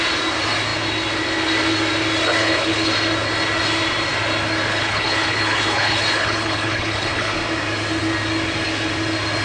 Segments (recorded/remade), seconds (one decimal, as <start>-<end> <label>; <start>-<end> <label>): 0.0-2.4 recorded; 2.4-2.9 remade; 2.9-4.7 recorded; 4.7-7.3 remade; 7.3-9.4 recorded